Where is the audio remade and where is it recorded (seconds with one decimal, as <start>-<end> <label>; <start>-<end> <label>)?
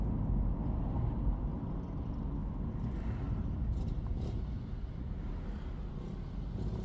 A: 0.0-6.8 recorded